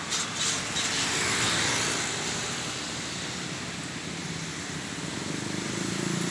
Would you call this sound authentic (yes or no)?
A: yes